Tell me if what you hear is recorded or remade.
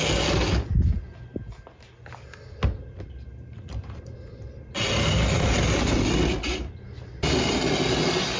recorded